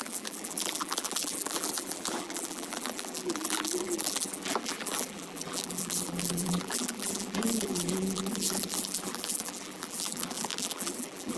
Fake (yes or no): yes